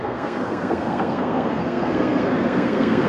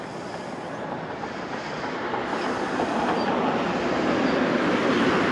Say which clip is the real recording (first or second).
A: second